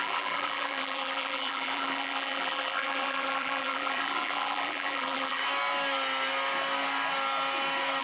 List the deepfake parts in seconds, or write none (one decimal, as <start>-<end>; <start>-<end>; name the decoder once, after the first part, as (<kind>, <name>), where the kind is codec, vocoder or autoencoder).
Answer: 0.0-5.4 (vocoder, BigVGAN v2)